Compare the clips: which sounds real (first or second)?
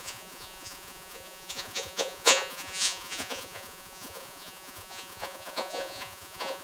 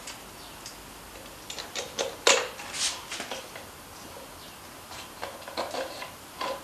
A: second